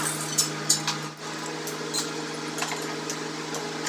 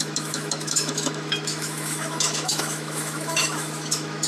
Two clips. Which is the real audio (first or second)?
first